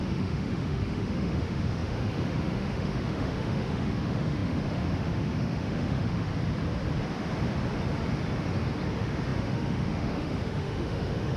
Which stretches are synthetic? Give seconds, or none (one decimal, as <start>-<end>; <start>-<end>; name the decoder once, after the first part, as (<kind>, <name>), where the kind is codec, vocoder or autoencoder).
0.0-6.3 (autoencoder, DAC-VAE); 8.9-11.4